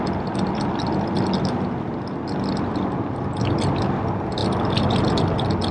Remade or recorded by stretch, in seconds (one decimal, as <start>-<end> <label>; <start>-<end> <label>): 0.0-5.7 recorded